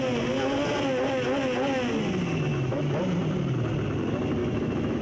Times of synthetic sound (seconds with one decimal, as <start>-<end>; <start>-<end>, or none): 2.5-3.0; 4.4-5.0